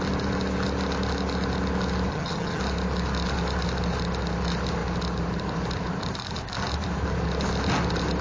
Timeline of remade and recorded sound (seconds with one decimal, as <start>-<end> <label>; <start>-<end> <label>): 0.0-2.1 recorded; 2.1-2.6 remade; 2.6-8.2 recorded

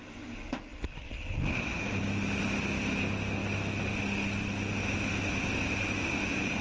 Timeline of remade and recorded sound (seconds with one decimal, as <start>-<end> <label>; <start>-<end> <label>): 0.0-6.6 recorded